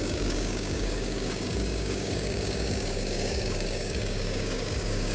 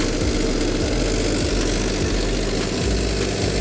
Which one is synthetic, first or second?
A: first